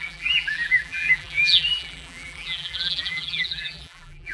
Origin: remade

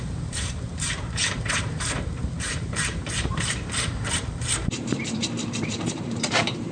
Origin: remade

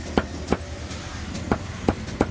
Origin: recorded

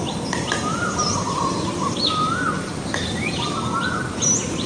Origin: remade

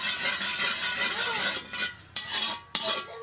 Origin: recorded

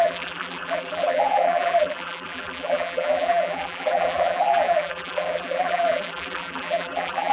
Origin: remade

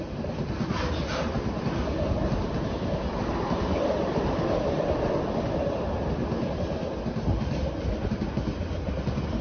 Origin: recorded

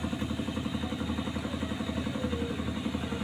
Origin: recorded